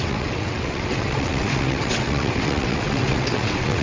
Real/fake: fake